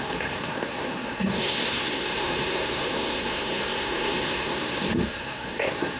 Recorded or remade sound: remade